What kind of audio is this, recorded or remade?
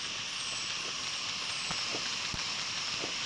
recorded